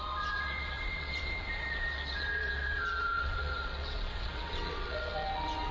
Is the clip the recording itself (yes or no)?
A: no